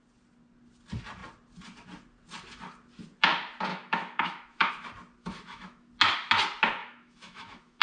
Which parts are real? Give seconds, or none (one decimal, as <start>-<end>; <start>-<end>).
0.0-3.7; 4.7-5.2; 5.9-6.8